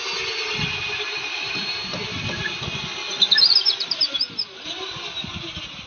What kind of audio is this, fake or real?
real